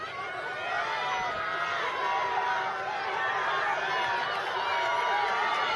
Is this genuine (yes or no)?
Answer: yes